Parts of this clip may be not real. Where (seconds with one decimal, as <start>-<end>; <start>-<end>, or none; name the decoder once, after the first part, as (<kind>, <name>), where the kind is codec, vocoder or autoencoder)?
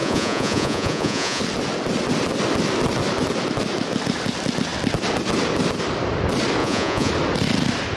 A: 0.0-1.4 (vocoder, Vocos); 6.6-7.1